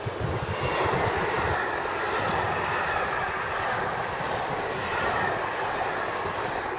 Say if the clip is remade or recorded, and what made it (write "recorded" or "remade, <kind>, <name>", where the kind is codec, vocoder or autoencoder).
recorded